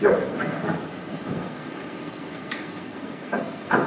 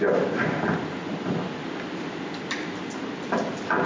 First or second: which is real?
second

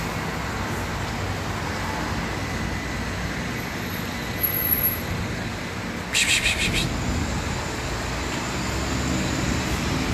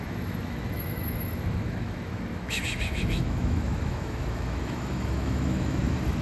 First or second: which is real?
first